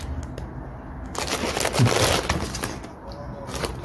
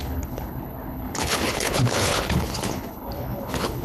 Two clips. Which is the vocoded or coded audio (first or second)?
second